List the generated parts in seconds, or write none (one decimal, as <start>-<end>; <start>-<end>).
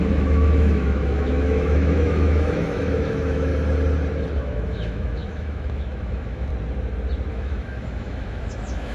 0.0-3.5; 4.4-6.5; 7.3-8.9